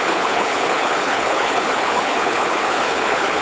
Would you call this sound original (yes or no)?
no